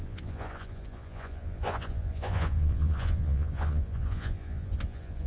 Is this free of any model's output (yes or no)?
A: no